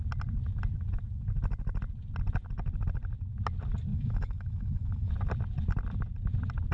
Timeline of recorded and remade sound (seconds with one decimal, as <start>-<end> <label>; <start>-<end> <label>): 0.0-3.9 recorded; 3.9-5.1 remade; 5.1-6.7 recorded